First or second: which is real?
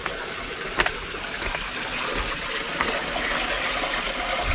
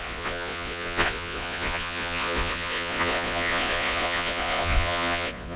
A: first